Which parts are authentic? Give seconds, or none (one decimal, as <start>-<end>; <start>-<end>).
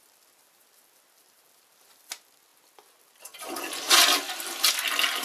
0.0-5.2